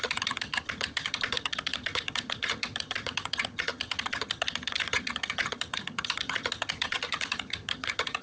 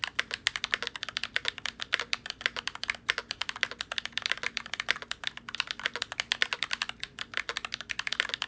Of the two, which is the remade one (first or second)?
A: first